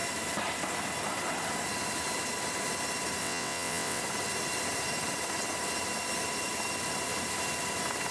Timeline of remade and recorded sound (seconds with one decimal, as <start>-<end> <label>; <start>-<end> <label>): 0.0-3.2 recorded; 3.2-4.0 remade; 4.0-8.1 recorded